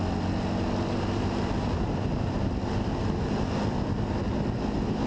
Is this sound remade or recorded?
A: recorded